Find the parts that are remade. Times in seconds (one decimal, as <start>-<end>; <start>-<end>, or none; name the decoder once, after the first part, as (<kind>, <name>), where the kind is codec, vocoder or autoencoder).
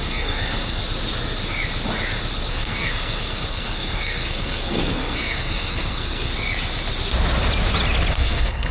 0.0-0.8 (codec, SNAC); 2.5-6.3; 8.1-8.7